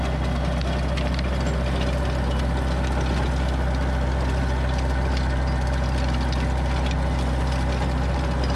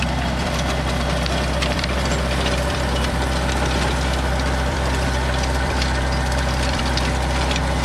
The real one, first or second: first